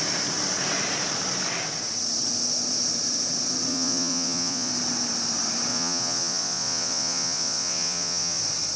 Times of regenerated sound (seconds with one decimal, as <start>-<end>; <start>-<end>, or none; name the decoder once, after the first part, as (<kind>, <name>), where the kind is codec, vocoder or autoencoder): 3.7-4.7 (vocoder, Vocos); 5.7-8.4

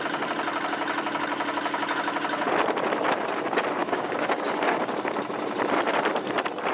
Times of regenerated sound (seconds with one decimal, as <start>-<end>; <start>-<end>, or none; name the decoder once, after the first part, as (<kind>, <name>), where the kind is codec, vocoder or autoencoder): 3.8-4.8 (codec, DAC)

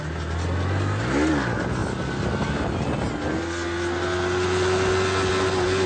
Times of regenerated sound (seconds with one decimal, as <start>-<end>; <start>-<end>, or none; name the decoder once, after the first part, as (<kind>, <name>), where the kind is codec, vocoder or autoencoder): none

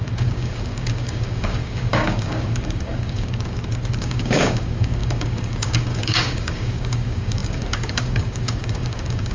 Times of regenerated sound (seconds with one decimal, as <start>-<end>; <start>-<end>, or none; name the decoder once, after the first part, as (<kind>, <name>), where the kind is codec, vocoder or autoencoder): 0.0-9.3 (codec, DAC)

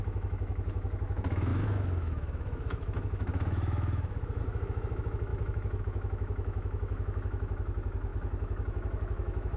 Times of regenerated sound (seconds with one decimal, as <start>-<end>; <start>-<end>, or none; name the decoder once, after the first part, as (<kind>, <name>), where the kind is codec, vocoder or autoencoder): 0.0-9.6 (autoencoder, DAC-VAE)

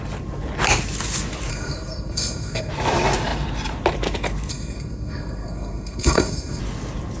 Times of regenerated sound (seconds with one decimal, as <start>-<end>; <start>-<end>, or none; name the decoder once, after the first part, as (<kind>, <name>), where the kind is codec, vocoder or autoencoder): 1.5-2.7 (codec, SNAC); 4.5-6.6

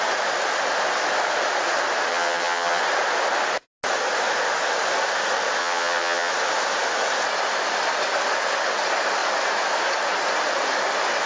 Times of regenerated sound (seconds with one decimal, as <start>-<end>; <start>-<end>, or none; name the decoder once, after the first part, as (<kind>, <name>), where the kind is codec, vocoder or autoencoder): 2.1-2.8 (vocoder, HiFi-GAN); 5.6-6.3